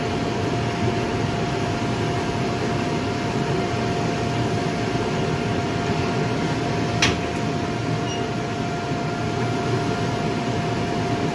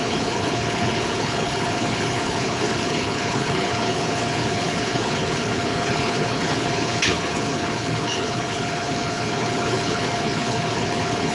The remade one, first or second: second